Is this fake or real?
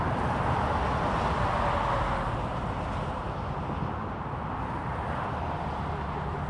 real